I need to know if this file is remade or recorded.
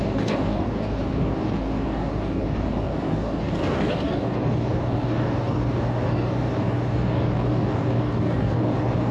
remade